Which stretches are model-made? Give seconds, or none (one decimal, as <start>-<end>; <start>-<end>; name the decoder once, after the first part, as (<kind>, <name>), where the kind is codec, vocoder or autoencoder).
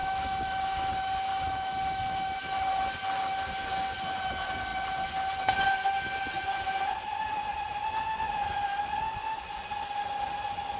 0.0-0.9 (autoencoder, DAC-VAE); 1.3-2.7